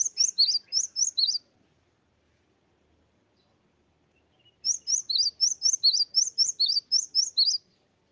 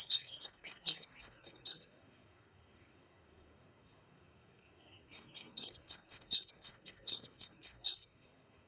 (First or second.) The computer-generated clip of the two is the second